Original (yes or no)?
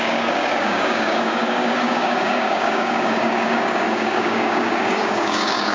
no